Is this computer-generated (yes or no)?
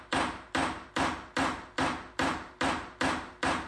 no